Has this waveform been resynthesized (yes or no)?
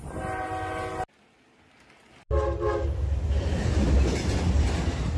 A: no